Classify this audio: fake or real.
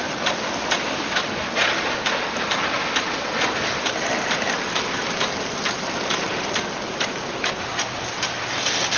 real